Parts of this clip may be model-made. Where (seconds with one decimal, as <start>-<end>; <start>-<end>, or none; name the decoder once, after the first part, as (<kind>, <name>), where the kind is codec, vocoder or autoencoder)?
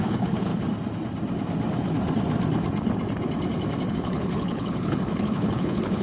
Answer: 0.0-0.5 (codec, HILCodec); 3.9-6.0